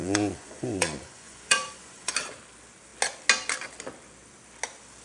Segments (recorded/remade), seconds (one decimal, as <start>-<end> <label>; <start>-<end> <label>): 0.0-2.1 remade; 2.1-5.0 recorded